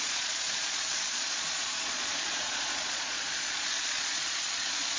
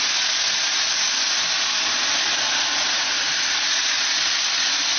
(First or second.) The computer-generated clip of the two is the first